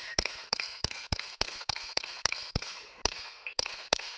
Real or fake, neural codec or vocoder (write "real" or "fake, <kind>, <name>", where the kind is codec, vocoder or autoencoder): fake, codec, SNAC